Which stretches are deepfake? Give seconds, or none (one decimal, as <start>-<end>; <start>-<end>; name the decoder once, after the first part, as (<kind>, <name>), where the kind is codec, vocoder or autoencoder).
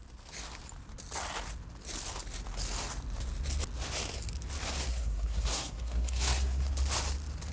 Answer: 4.9-6.7 (codec, SNAC)